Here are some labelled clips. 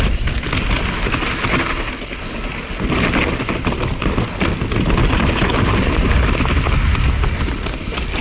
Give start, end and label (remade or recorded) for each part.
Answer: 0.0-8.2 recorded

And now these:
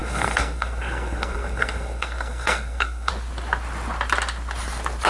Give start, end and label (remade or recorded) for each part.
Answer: 0.0-3.1 remade; 3.1-5.1 recorded

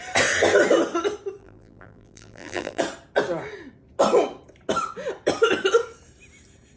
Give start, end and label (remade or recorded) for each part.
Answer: 0.0-1.4 recorded; 1.4-2.8 remade; 2.8-6.8 recorded

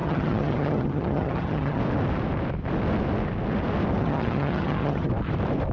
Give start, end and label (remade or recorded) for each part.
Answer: 0.0-1.8 remade; 1.8-4.0 recorded; 4.0-5.1 remade; 5.1-5.7 recorded

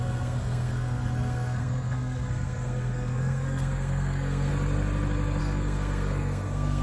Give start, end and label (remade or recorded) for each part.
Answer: 0.0-4.5 remade; 4.5-5.4 recorded; 5.4-6.8 remade

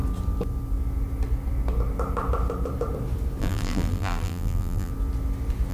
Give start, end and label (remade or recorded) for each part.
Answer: 0.0-3.4 recorded; 3.4-4.9 remade; 4.9-5.7 recorded